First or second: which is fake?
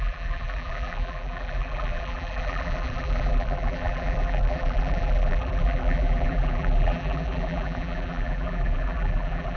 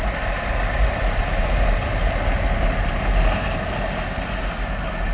first